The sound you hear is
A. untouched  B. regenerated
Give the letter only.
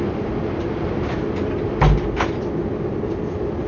A